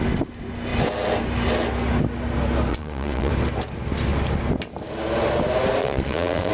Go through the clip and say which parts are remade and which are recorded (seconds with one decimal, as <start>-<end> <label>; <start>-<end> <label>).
0.0-2.7 recorded; 2.7-3.3 remade; 3.3-5.8 recorded; 5.8-6.5 remade

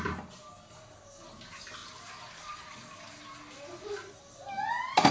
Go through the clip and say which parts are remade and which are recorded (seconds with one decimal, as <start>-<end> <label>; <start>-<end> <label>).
0.0-5.1 recorded

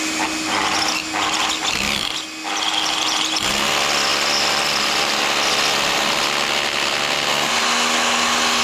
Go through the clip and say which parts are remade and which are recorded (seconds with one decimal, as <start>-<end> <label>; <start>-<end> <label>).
0.0-4.1 recorded; 4.1-5.2 remade; 5.2-8.6 recorded